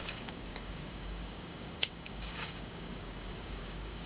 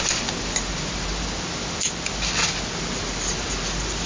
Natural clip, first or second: second